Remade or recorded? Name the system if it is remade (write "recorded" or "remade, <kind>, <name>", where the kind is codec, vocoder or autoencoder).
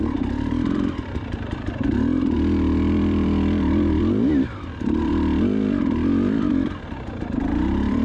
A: remade, vocoder, BigVGAN v2